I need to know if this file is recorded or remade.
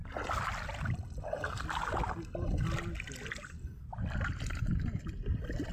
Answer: recorded